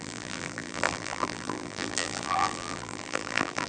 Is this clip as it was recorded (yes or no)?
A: no